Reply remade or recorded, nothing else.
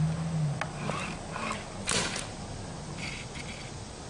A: recorded